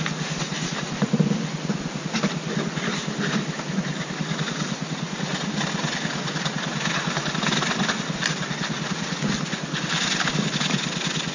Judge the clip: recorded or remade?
recorded